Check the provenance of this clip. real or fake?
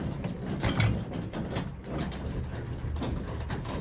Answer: real